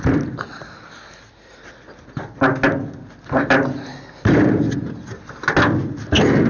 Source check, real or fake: real